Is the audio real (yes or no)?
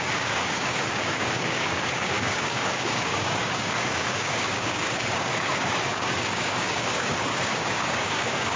no